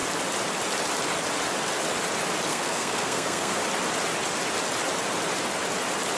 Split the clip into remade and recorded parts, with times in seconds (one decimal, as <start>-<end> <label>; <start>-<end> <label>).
0.0-2.5 recorded; 2.5-3.6 remade; 3.6-6.2 recorded